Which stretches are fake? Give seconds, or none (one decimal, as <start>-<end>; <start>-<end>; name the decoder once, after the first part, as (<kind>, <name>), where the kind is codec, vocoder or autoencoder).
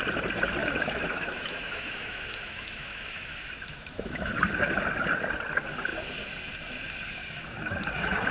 0.6-4.3 (autoencoder, DAC-VAE); 7.2-8.3